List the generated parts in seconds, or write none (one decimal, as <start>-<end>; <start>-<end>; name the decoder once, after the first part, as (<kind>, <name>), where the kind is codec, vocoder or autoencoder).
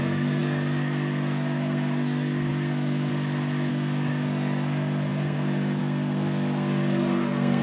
0.0-3.1 (codec, SNAC); 3.7-7.6